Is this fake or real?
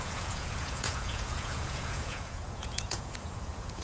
fake